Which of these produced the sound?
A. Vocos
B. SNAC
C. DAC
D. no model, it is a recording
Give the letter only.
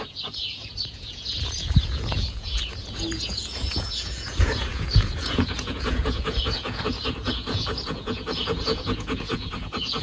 A